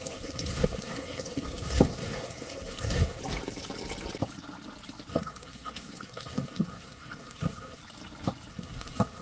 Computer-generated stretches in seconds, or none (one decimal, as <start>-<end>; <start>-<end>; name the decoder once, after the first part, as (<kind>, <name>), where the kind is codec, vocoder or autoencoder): 0.0-3.2 (codec, SNAC); 5.1-7.8; 8.5-9.2